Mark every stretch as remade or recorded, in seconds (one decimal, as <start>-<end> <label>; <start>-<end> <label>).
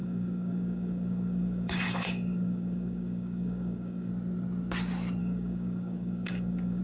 0.0-4.1 remade; 4.1-5.2 recorded; 5.2-6.8 remade